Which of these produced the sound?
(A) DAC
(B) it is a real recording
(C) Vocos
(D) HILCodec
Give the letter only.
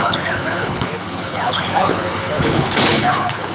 D